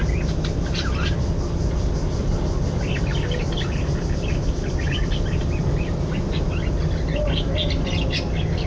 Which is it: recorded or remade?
recorded